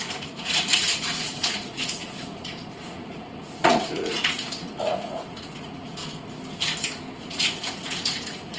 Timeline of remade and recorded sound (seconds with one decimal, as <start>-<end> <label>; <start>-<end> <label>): 0.0-6.0 remade; 6.0-7.2 recorded; 7.2-8.6 remade